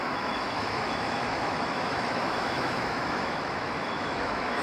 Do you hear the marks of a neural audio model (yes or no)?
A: yes